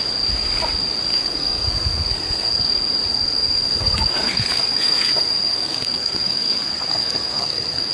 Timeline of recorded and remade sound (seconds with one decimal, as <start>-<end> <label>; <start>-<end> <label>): 0.0-1.1 recorded; 1.1-2.7 remade; 2.7-3.1 recorded; 3.1-7.9 remade